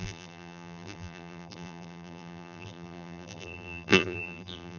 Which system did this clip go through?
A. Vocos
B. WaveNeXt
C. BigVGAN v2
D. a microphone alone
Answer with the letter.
C